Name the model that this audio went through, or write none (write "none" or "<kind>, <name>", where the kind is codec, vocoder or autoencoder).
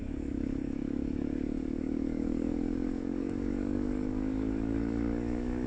codec, DAC